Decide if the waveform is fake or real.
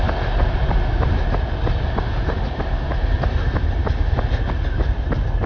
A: real